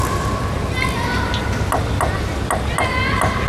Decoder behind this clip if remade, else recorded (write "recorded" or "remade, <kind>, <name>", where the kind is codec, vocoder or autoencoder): recorded